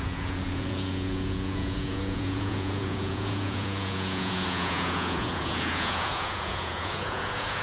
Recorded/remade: remade